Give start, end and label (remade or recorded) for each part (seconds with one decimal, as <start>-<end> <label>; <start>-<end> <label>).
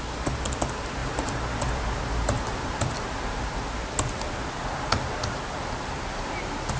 0.0-1.0 recorded; 1.0-3.6 remade; 3.6-6.8 recorded